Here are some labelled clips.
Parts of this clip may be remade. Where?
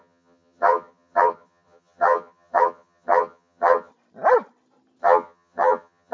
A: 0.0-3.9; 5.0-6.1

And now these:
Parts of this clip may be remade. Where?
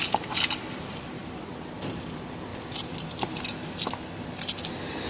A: none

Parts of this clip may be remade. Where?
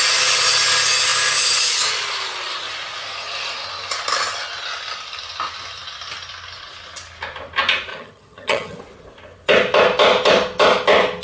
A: 7.9-8.8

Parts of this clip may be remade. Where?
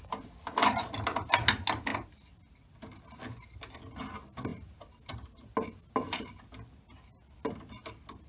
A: none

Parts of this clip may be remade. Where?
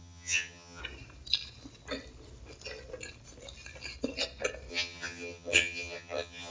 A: 0.0-0.8; 4.7-6.5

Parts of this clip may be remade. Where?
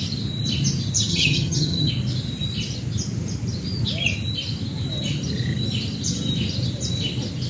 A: 1.1-1.9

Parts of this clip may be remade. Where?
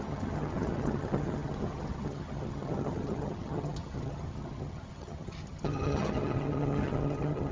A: 0.0-7.5